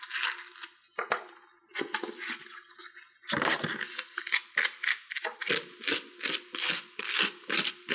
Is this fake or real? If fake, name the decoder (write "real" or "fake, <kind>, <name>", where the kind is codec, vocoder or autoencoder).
real